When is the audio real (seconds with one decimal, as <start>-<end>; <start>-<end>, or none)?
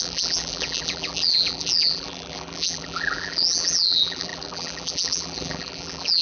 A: none